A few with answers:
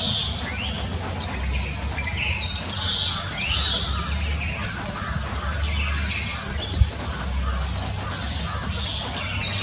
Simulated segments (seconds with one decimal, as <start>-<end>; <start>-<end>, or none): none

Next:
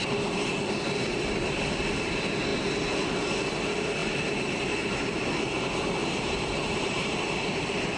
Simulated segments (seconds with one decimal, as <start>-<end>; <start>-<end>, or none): 4.0-5.2; 6.0-8.0

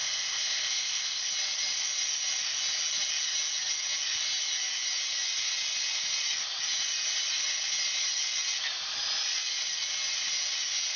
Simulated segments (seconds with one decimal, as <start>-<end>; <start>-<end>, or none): 0.0-1.3

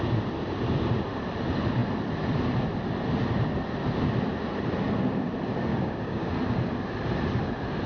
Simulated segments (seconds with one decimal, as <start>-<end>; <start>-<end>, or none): 5.7-6.3

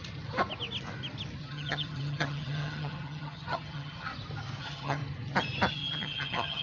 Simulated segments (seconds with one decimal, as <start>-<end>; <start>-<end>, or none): 1.4-4.1; 4.6-5.0; 5.7-6.6

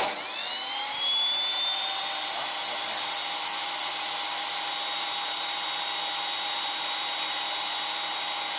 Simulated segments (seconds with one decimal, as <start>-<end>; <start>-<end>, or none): 1.5-2.3